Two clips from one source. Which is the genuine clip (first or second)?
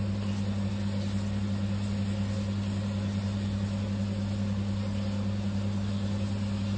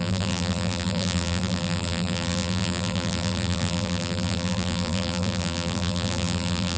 first